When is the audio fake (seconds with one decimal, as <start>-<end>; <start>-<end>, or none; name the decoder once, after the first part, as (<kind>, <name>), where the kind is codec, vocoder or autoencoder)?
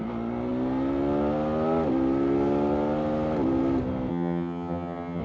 4.1-5.2 (vocoder, HiFi-GAN)